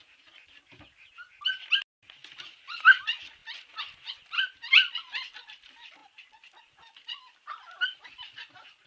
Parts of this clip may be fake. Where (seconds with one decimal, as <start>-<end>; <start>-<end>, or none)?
none